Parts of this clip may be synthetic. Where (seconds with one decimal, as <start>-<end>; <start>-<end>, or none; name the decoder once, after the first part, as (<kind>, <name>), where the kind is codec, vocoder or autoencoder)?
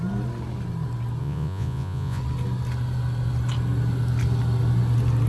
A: 1.2-2.2 (vocoder, Vocos)